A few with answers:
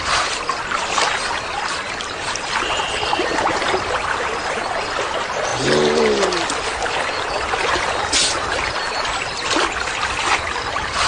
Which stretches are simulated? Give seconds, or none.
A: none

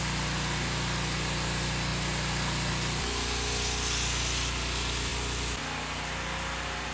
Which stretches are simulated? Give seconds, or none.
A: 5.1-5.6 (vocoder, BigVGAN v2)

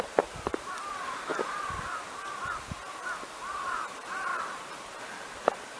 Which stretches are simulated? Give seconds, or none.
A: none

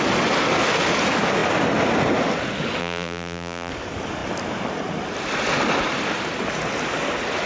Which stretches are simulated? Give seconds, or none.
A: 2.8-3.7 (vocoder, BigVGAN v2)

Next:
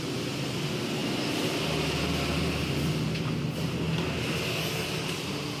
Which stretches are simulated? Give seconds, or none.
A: none

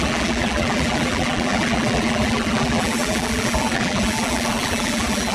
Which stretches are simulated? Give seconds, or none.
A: 0.0-5.3 (vocoder, BigVGAN v2)